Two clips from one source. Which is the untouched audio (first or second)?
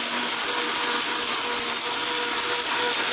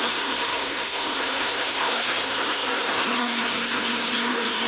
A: first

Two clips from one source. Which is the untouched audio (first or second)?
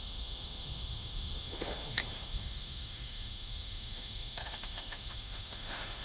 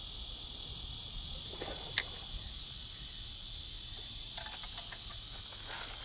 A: second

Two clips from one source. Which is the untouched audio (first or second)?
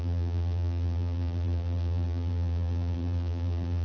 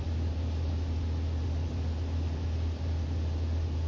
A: second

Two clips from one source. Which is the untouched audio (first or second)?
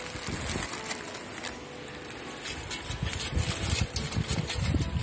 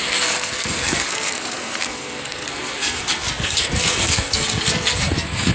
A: first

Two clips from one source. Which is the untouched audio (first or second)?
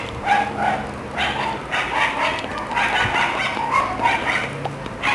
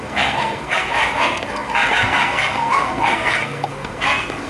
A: first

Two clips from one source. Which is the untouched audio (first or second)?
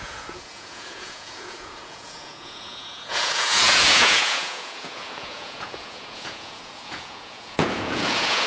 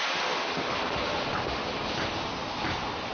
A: second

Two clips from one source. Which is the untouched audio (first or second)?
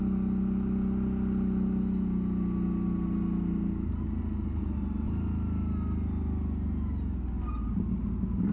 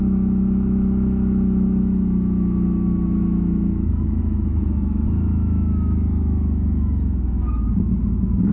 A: first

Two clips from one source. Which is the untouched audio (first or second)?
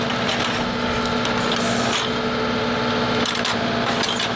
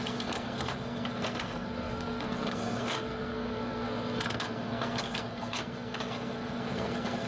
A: first